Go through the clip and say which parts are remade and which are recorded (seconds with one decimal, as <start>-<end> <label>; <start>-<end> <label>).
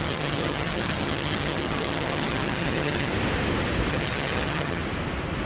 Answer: 0.0-3.1 remade; 3.1-3.9 recorded; 3.9-4.8 remade; 4.8-5.5 recorded